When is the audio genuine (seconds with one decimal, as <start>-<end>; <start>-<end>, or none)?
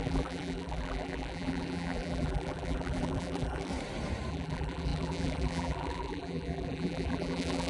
3.7-4.3